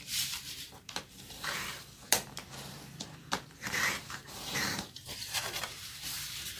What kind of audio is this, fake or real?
fake